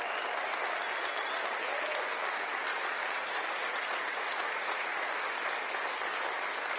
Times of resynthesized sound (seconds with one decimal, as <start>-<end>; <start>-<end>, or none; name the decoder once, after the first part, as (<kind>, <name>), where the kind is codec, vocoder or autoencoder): 2.7-5.4 (vocoder, Vocos)